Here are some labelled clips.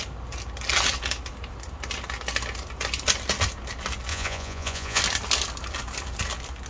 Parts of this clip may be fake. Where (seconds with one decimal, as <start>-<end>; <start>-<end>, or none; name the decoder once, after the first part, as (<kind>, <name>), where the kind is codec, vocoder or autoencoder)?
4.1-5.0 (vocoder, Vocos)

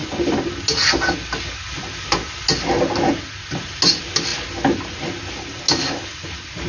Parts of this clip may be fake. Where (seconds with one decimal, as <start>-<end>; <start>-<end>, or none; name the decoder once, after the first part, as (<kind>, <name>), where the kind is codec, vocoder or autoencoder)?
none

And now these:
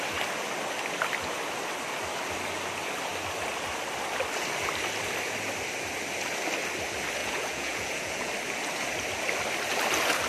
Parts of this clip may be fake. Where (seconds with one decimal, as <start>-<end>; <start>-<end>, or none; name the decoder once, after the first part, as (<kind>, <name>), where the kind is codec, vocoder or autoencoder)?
7.2-8.3 (vocoder, Vocos)

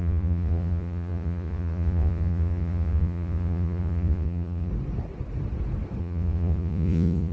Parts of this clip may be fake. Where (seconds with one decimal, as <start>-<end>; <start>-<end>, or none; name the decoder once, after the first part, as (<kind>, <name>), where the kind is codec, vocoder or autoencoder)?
0.0-4.7 (vocoder, Vocos); 6.0-7.3

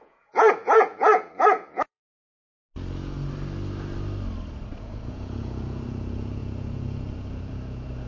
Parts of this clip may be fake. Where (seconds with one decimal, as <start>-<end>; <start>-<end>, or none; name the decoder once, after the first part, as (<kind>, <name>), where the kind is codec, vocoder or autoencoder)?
0.0-2.0 (vocoder, Vocos); 4.8-8.1